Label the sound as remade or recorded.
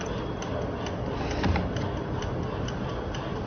recorded